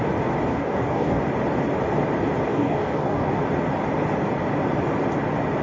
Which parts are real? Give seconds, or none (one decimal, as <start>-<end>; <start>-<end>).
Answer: 0.0-0.5; 1.2-2.5; 3.4-5.6